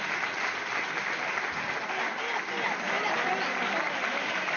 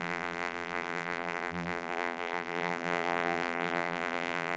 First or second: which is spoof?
second